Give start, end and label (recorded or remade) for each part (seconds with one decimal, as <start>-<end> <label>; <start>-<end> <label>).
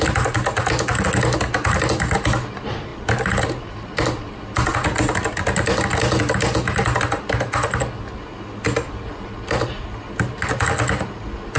0.0-2.9 recorded; 2.9-4.3 remade; 4.3-11.6 recorded